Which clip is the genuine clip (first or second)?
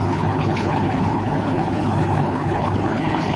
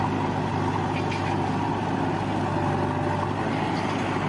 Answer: second